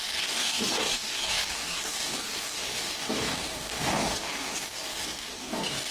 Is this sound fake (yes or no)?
yes